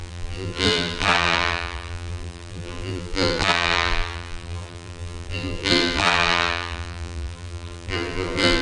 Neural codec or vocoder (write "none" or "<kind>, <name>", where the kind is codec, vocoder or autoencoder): vocoder, BigVGAN v2